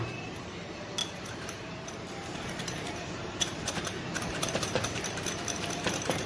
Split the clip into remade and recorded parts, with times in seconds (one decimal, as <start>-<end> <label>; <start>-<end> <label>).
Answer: 0.0-6.3 remade